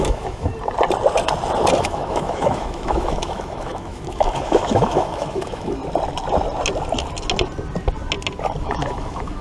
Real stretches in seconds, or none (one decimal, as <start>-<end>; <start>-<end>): 0.5-1.8; 5.8-8.6